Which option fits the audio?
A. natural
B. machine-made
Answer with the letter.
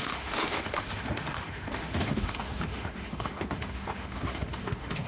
B